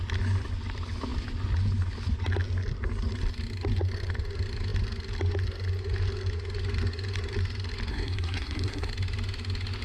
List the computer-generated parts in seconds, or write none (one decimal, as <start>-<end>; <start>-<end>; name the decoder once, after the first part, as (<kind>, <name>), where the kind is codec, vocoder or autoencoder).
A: 7.9-8.9 (codec, SNAC)